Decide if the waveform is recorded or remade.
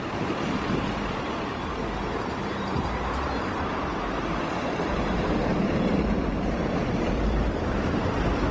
remade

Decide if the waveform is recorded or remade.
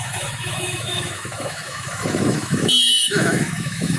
remade